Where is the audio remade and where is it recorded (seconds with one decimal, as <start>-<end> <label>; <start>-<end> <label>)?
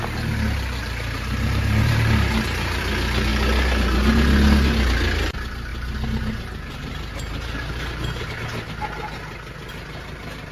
0.0-0.8 recorded; 0.8-2.8 remade; 2.8-5.7 recorded; 5.7-8.4 remade; 8.4-10.5 recorded